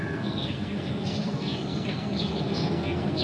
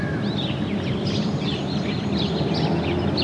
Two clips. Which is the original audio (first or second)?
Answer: second